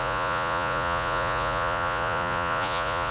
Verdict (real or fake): fake